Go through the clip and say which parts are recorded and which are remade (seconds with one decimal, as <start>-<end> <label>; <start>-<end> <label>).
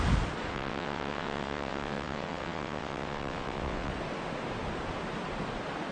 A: 0.0-0.5 recorded; 0.5-3.9 remade; 3.9-5.9 recorded